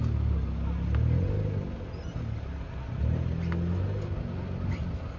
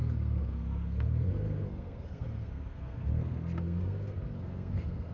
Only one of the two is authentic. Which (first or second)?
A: first